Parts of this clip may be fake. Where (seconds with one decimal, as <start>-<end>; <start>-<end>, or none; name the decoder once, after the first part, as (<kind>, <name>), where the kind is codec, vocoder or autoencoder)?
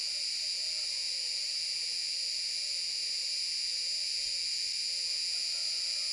0.0-6.1 (vocoder, BigVGAN v2)